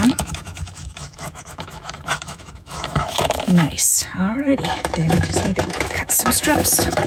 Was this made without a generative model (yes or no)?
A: no